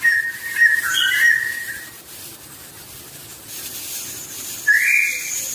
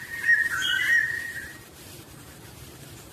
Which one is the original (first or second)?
first